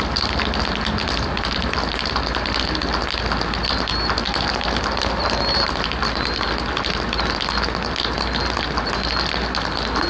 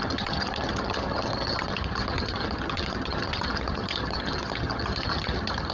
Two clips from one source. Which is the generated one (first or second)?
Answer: second